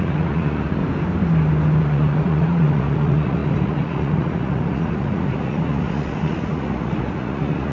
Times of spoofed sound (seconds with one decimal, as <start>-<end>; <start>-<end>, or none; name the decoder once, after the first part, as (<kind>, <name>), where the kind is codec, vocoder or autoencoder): 0.0-0.8 (vocoder, Vocos); 1.8-7.7